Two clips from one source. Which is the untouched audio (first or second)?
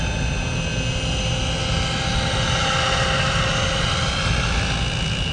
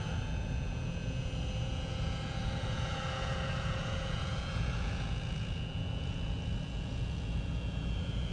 first